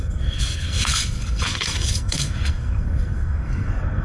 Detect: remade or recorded remade